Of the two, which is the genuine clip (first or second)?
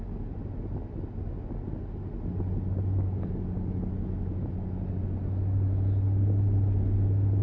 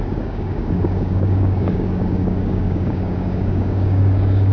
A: first